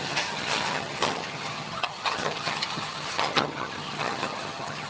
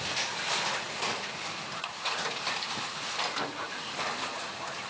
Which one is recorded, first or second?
second